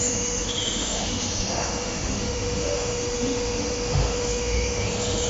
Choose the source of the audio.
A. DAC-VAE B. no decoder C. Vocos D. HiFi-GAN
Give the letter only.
A